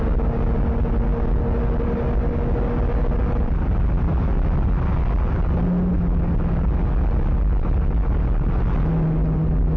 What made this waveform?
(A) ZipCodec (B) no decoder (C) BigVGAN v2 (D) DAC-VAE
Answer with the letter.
B